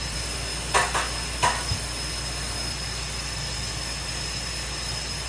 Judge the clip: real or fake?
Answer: real